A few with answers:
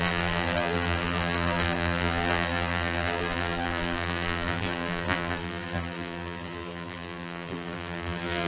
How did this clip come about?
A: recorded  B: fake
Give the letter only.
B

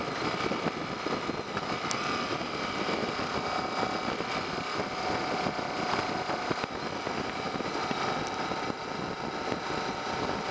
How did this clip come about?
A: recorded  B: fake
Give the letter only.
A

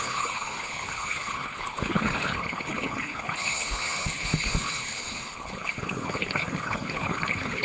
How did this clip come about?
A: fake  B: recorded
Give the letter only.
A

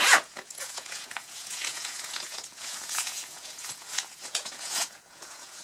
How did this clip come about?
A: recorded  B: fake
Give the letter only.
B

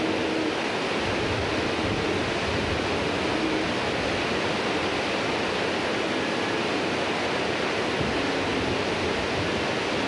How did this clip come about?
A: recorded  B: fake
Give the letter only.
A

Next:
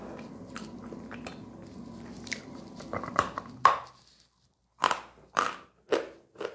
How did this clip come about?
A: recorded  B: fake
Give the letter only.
A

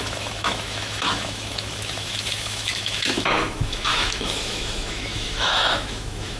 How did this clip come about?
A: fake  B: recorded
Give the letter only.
A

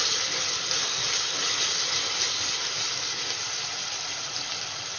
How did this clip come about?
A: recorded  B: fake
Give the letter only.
A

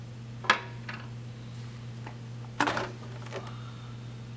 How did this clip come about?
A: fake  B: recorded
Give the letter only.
B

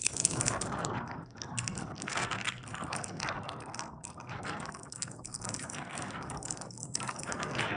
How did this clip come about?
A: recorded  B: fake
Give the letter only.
B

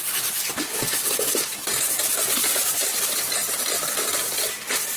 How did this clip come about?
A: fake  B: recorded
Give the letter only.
B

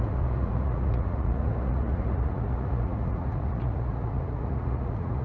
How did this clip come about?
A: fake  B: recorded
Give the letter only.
A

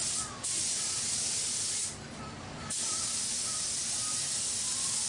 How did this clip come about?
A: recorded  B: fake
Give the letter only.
A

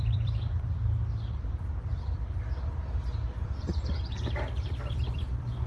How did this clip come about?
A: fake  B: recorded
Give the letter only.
A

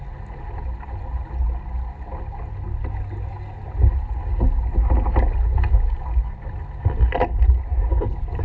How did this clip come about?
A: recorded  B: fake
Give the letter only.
A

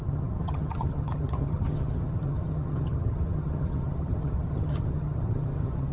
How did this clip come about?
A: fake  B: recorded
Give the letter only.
A